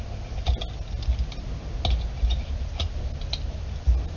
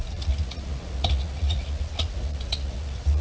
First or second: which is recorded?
first